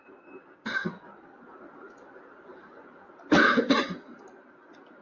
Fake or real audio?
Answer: real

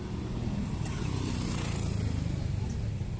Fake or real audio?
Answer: real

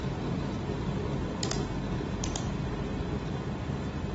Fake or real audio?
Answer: real